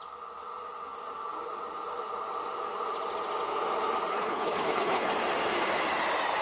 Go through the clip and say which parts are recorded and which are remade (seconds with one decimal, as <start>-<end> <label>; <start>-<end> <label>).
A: 0.0-4.1 recorded; 4.1-5.1 remade; 5.1-6.4 recorded